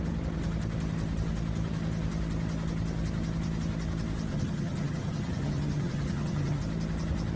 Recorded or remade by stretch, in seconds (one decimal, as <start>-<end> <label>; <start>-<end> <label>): 0.0-4.3 recorded; 4.3-6.6 remade; 6.6-7.4 recorded